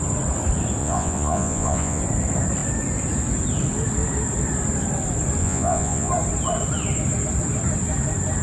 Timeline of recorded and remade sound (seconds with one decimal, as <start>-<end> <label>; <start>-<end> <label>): 0.0-0.8 recorded; 0.8-2.0 remade; 2.0-5.4 recorded; 5.4-6.1 remade; 6.1-8.4 recorded